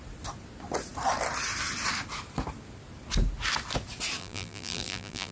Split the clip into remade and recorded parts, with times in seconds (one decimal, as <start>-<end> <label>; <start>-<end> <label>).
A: 0.0-4.2 recorded; 4.2-5.3 remade